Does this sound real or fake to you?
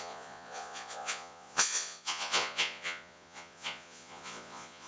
fake